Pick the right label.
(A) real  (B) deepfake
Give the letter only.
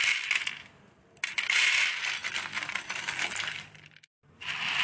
A